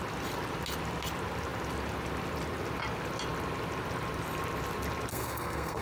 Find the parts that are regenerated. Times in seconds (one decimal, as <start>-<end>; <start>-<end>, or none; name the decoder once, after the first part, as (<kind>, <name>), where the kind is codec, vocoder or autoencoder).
5.1-5.8 (codec, SNAC)